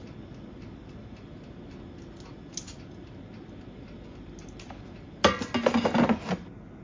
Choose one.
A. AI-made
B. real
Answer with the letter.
B